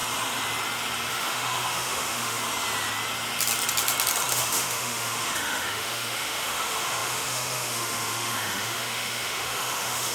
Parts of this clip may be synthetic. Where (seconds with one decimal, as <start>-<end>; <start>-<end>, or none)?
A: 1.1-2.4; 4.3-10.1